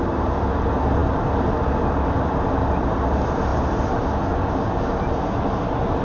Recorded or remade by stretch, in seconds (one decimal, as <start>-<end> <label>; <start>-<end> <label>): 0.0-6.0 recorded